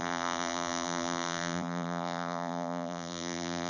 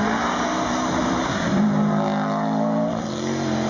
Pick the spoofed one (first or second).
first